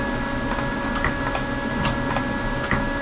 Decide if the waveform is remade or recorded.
recorded